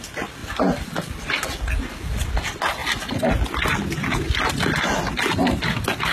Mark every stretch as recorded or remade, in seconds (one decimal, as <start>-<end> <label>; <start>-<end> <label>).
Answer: 0.0-6.1 recorded